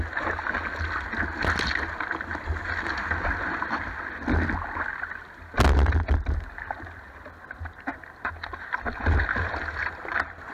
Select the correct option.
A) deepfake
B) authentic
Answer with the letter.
B